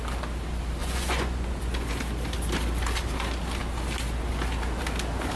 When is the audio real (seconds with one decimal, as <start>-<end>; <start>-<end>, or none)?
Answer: 0.0-0.8; 2.0-5.4

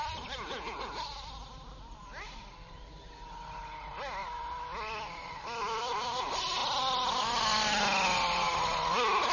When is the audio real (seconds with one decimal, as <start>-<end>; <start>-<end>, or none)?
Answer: 0.0-9.3